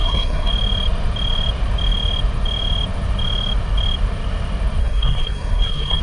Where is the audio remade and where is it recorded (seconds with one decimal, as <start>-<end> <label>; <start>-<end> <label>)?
0.0-0.5 remade; 0.5-4.8 recorded; 4.8-6.0 remade